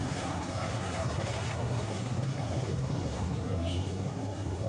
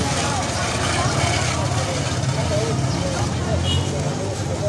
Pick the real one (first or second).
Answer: second